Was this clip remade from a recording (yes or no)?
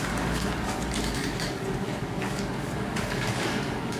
yes